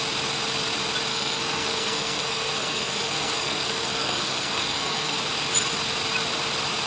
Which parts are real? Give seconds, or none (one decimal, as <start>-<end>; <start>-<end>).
0.0-1.1; 5.2-6.9